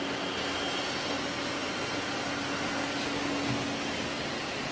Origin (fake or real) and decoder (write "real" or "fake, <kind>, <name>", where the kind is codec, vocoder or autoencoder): real